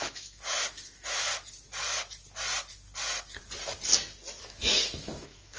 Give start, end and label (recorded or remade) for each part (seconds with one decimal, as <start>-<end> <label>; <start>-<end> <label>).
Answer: 0.0-1.3 remade; 1.3-4.4 recorded; 4.4-5.6 remade